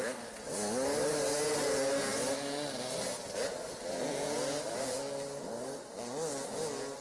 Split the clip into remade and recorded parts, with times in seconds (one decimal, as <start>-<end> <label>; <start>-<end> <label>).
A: 0.0-7.0 recorded